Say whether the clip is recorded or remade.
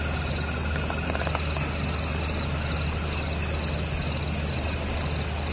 recorded